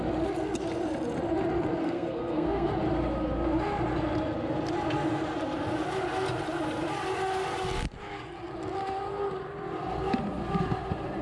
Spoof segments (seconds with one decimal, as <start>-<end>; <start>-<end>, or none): 1.8-2.7